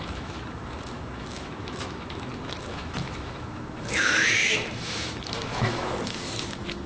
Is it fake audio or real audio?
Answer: fake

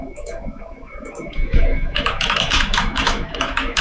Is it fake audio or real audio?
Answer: fake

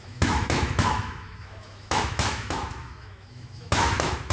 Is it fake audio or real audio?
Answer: fake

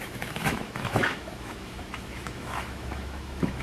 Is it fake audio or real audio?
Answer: fake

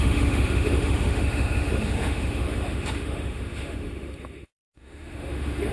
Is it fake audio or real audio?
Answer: fake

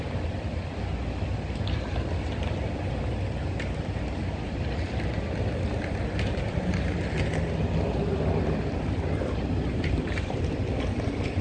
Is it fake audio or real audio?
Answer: real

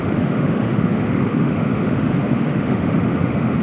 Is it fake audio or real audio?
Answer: fake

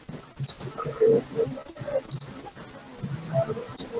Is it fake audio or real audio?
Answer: real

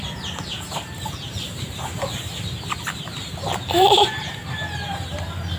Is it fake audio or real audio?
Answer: real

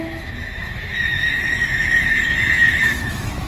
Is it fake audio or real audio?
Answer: fake